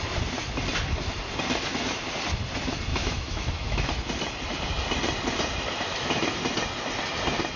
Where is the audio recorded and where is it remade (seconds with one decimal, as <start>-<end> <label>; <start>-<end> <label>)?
0.0-2.9 recorded; 2.9-3.9 remade; 3.9-5.9 recorded; 5.9-6.4 remade; 6.4-7.6 recorded